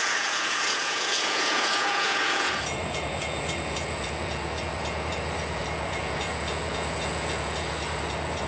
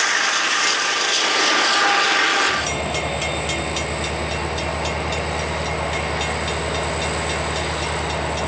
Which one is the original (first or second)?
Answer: second